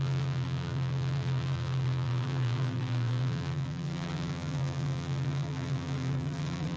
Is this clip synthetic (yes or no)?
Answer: yes